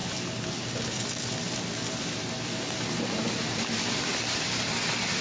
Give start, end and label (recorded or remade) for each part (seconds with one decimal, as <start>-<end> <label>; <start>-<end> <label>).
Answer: 0.0-5.2 recorded

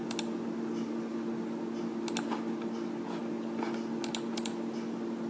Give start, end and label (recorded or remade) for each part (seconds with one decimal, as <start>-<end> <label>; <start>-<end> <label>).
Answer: 0.0-5.3 recorded

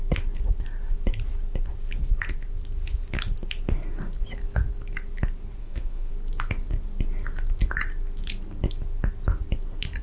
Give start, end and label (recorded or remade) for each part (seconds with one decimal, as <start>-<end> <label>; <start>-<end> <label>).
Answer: 0.0-5.6 recorded; 5.6-6.1 remade; 6.1-10.0 recorded

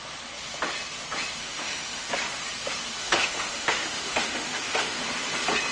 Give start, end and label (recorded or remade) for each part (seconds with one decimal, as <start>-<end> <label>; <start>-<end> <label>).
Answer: 0.0-1.4 recorded; 1.4-2.1 remade; 2.1-3.0 recorded; 3.0-5.0 remade; 5.0-5.7 recorded